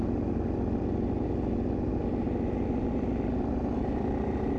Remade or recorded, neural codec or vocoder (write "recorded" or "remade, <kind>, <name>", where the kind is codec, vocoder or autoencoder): recorded